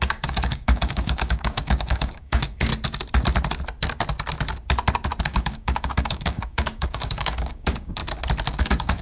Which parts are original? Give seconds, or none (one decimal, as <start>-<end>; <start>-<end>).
2.7-5.2; 8.0-8.6